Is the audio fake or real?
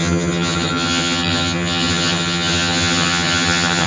fake